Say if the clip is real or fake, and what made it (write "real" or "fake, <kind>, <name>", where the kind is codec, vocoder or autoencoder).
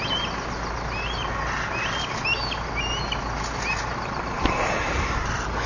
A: real